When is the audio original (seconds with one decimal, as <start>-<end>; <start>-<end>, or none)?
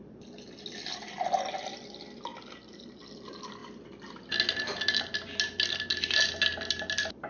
0.0-7.3